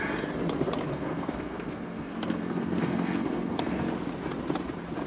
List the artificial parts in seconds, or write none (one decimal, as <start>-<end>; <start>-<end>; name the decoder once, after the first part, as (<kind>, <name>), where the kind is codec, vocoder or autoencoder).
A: 0.9-3.9 (codec, SNAC)